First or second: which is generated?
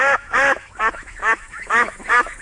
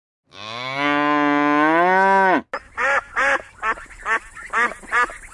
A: first